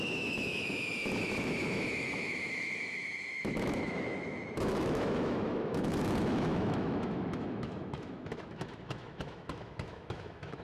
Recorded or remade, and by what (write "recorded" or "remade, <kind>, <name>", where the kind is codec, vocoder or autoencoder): remade, autoencoder, DAC-VAE